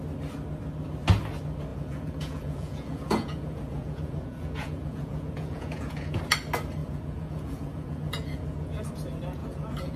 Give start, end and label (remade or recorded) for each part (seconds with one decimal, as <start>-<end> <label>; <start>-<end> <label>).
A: 0.0-1.7 recorded; 1.7-6.2 remade; 6.2-6.8 recorded; 6.8-8.9 remade; 8.9-9.4 recorded; 9.4-10.0 remade